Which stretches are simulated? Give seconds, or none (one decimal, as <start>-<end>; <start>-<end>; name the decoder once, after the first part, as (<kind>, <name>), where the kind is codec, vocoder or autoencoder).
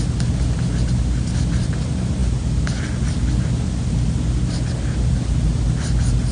none